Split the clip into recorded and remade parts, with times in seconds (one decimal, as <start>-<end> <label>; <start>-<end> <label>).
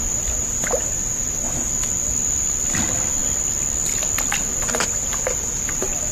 0.0-6.1 recorded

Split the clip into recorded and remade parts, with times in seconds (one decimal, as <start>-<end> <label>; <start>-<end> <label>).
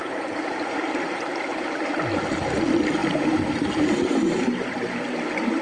0.0-2.0 remade; 2.0-3.0 recorded; 3.0-4.4 remade; 4.4-5.6 recorded